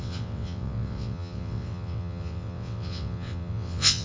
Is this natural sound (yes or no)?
no